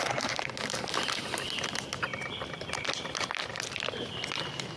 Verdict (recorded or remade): recorded